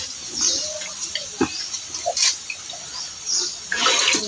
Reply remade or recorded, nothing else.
recorded